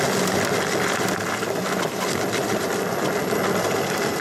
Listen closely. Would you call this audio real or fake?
real